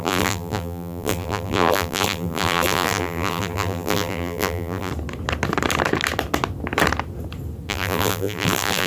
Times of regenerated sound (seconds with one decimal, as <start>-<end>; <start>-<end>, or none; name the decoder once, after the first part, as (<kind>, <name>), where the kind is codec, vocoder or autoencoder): 0.0-4.9 (vocoder, BigVGAN v2); 7.7-8.9

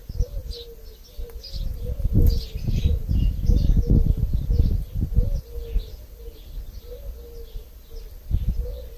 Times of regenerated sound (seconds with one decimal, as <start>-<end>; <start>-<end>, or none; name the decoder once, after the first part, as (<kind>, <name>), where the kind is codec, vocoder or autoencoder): none